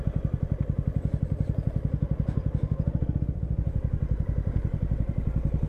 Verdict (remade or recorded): recorded